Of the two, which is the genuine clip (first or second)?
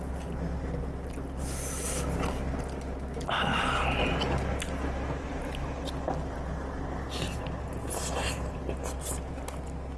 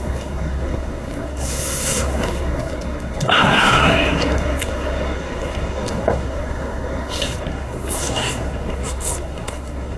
first